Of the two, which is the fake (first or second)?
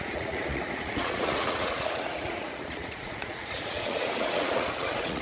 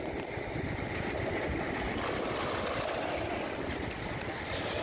first